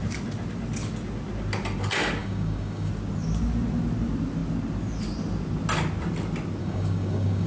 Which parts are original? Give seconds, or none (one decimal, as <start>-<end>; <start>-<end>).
0.0-2.2; 2.9-6.6